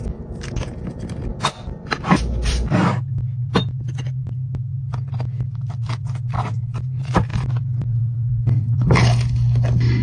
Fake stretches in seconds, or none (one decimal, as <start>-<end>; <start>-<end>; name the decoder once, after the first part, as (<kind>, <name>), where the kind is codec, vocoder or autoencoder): none